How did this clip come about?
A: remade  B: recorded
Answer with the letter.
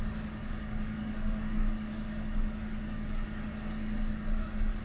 A